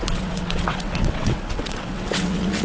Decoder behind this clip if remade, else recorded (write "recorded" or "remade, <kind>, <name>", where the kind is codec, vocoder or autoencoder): remade, vocoder, WaveNeXt